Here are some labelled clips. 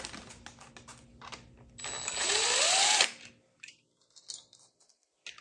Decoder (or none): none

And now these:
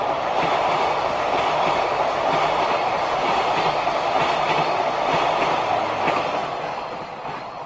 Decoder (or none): none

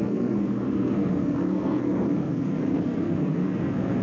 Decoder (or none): codec, SNAC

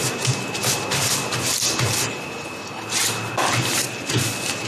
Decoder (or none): none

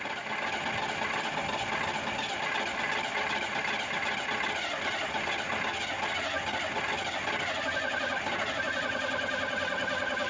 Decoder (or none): none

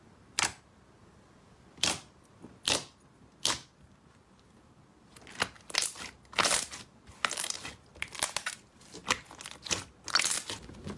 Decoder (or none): none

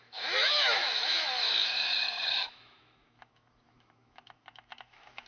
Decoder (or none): autoencoder, DAC-VAE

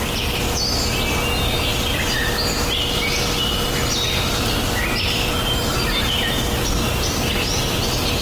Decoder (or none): none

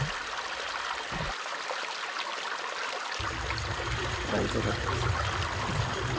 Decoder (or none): none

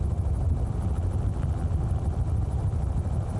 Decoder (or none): none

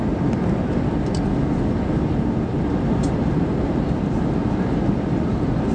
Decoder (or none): none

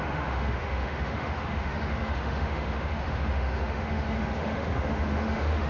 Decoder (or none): autoencoder, DAC-VAE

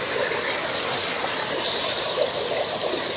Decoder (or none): none